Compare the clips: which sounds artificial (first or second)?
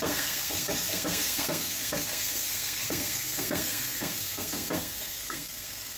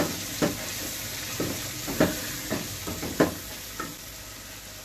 first